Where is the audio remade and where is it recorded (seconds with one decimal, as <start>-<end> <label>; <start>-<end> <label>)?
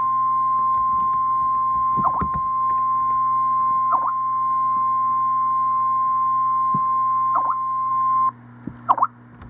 0.0-9.5 recorded